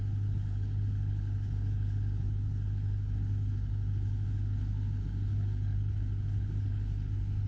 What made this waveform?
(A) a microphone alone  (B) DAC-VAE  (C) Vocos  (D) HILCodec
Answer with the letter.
D